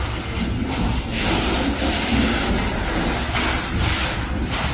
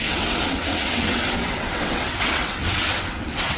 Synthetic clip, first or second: second